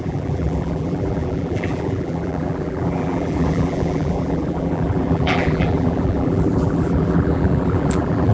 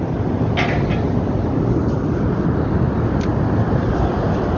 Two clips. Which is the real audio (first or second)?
second